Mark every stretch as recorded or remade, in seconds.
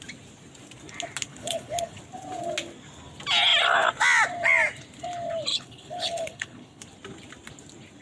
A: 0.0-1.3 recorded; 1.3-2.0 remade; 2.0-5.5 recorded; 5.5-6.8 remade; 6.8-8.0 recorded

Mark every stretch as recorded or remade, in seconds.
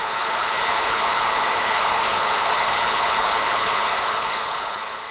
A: 0.0-5.1 remade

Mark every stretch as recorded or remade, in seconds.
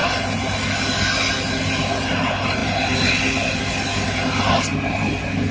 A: 0.0-5.5 recorded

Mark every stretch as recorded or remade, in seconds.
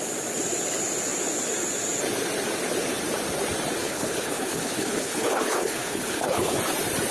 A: 0.0-3.8 recorded; 3.8-6.6 remade; 6.6-7.1 recorded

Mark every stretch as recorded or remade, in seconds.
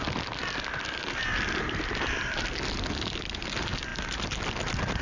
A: 0.0-5.0 recorded